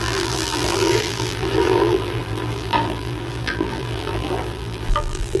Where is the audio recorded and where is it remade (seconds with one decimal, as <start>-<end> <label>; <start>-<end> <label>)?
0.0-5.4 remade